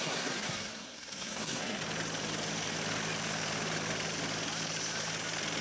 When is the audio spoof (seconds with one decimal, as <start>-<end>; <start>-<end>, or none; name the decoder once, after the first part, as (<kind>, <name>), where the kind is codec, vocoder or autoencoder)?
0.0-1.8 (codec, SNAC)

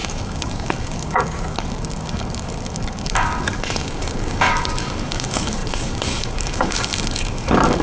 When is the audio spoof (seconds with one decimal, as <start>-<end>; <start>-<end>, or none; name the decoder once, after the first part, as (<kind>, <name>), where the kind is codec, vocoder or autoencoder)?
0.0-7.8 (codec, DAC)

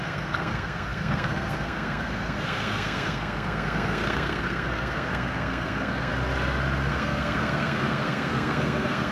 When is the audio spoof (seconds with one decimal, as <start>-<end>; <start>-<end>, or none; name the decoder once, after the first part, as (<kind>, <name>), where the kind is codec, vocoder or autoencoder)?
0.0-6.1 (codec, SNAC); 6.9-9.1

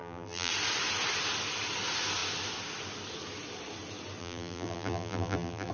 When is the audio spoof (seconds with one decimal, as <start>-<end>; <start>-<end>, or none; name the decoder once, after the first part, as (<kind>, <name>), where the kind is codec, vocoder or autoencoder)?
0.0-0.5 (vocoder, BigVGAN v2); 4.2-5.7

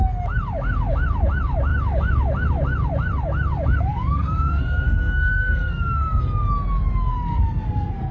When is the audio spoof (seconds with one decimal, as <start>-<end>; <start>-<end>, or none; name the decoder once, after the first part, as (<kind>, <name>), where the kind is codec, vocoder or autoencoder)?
3.9-6.2 (codec, SNAC); 7.1-8.1

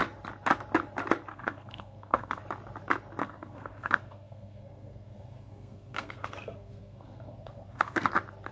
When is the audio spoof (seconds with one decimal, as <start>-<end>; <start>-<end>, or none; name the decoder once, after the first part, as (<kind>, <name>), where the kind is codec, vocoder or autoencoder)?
1.3-2.4 (codec, SNAC); 3.2-8.1

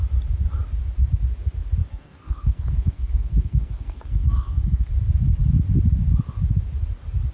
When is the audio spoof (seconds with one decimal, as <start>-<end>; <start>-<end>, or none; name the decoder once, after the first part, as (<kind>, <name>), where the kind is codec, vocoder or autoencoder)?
1.9-4.9 (codec, SNAC)